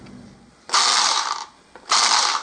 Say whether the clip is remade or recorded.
recorded